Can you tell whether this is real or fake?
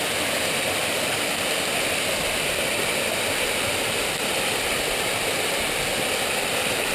real